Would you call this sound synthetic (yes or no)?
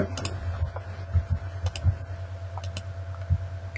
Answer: no